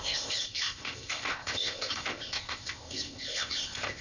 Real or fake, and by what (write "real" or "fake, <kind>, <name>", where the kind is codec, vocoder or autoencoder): fake, codec, ZipCodec